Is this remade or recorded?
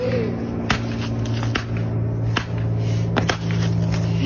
recorded